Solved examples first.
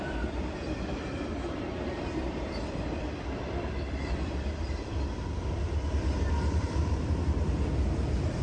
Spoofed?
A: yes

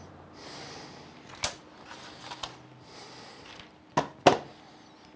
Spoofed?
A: no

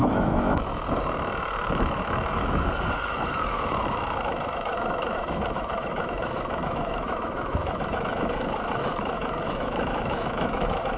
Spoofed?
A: yes